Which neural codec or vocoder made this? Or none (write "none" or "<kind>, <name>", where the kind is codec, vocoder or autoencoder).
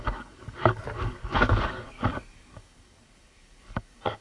codec, DAC